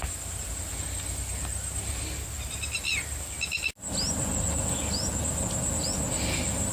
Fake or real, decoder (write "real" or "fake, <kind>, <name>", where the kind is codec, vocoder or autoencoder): real